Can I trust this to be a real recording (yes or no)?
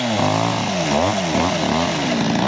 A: yes